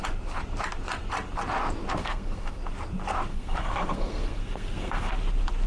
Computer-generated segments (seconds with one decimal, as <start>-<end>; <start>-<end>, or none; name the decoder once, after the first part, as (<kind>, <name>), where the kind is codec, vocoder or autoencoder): 2.0-2.6 (codec, SNAC); 3.3-5.1